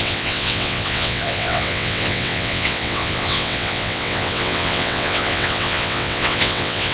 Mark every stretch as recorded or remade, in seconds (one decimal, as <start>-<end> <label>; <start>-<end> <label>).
0.0-6.9 remade